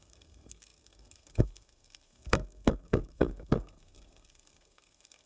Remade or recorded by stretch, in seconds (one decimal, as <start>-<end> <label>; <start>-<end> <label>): 0.0-5.3 remade

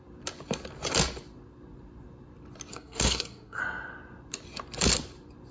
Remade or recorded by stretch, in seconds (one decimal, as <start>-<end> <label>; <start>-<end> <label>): 0.0-2.7 recorded; 2.7-3.6 remade; 3.6-5.5 recorded